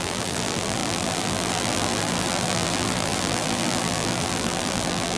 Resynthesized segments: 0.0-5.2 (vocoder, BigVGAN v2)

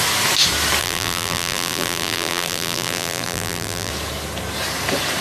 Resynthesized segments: 0.8-3.9 (vocoder, BigVGAN v2)

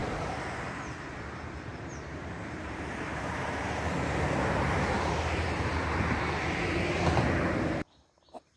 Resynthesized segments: 1.7-6.3 (vocoder, BigVGAN v2)

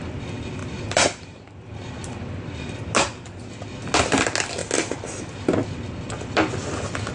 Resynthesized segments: 0.6-1.5 (vocoder, BigVGAN v2)